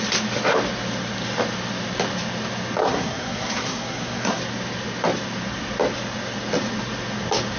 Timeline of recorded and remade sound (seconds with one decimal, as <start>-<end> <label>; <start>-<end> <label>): 0.0-2.8 recorded; 2.8-4.4 remade; 4.4-7.6 recorded